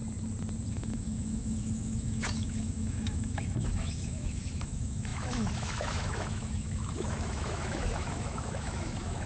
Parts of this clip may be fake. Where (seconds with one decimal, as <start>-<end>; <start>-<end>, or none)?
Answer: 0.7-9.3